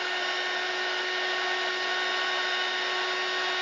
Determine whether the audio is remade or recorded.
recorded